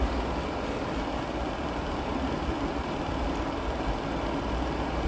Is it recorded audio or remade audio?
recorded